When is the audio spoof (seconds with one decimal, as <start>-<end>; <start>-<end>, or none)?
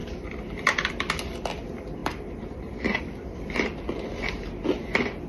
2.0-3.0